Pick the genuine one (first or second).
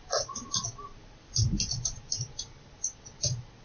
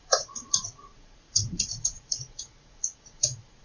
first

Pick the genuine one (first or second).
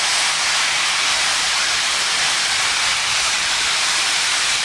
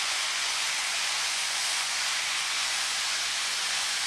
first